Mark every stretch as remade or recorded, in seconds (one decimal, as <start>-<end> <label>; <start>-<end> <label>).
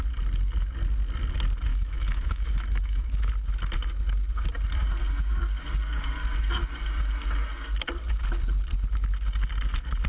0.0-1.7 recorded; 1.7-3.3 remade; 3.3-10.1 recorded